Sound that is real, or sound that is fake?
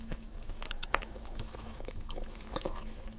fake